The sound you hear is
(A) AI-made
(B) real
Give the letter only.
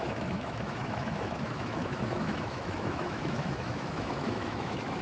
A